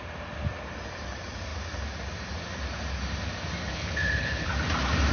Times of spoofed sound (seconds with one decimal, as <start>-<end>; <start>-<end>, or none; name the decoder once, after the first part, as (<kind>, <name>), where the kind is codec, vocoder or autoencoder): 3.6-4.5 (codec, HILCodec)